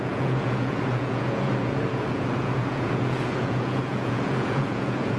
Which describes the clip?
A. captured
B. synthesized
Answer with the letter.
B